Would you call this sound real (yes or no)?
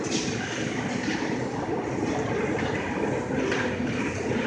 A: yes